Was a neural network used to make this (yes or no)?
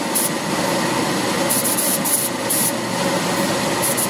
no